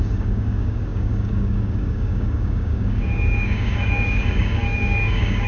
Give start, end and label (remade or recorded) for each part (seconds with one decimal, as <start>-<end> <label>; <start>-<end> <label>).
0.0-5.5 remade